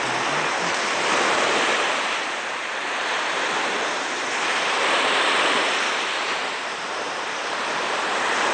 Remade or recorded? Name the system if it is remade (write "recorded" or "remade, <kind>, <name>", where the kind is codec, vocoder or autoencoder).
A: remade, vocoder, BigVGAN v2